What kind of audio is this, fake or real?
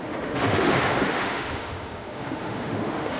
fake